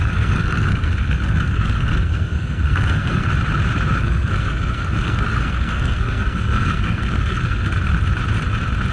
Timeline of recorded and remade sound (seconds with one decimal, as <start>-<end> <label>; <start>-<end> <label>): 0.0-3.3 remade; 3.3-4.0 recorded; 4.0-7.9 remade; 7.9-8.9 recorded